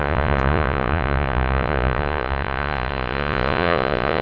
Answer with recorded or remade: remade